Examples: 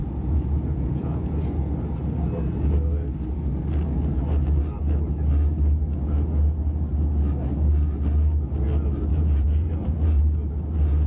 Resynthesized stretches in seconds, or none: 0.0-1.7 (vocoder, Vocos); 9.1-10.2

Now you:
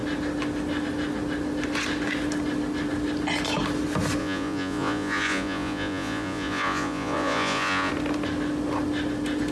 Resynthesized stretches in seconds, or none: 4.2-7.9 (vocoder, Vocos)